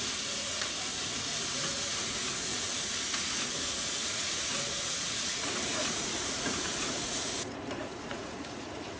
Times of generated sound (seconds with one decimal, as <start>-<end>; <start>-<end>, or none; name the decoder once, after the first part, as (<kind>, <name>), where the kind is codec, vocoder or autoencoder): 0.0-9.0 (vocoder, Vocos)